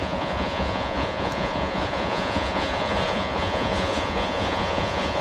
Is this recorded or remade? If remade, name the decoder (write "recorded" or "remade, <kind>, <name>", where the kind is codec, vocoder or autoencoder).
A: remade, vocoder, Vocos